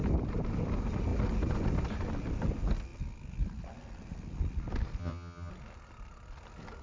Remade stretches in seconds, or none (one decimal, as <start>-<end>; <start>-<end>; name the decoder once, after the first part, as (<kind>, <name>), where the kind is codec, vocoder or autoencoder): 5.0-5.5 (vocoder, HiFi-GAN)